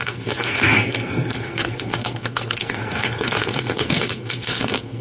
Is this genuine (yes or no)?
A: no